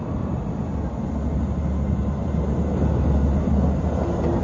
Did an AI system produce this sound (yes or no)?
no